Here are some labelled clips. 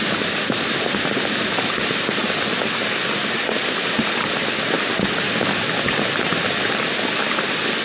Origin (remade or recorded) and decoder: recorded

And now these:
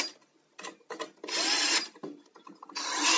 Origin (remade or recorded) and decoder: recorded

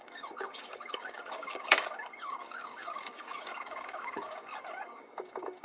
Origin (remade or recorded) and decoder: remade, codec, DAC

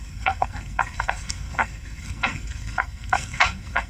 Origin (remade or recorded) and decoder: remade, codec, SNAC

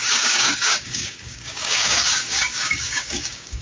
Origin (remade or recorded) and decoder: remade, codec, DAC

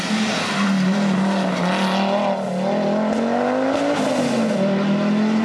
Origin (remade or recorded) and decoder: recorded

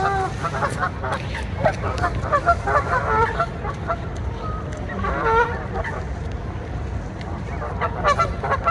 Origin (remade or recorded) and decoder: recorded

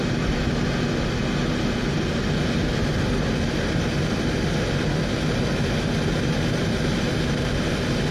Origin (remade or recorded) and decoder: recorded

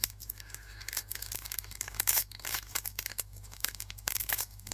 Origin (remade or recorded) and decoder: remade, codec, DAC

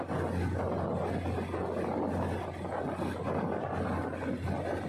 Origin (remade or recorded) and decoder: recorded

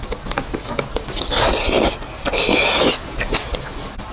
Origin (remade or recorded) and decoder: recorded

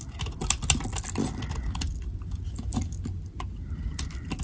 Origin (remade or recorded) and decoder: recorded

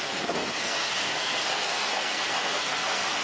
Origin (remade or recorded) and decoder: remade, codec, SNAC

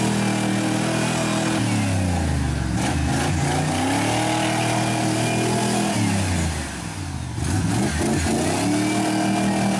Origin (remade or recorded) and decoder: recorded